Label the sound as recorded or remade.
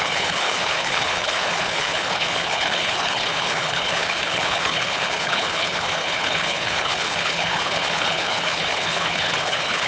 remade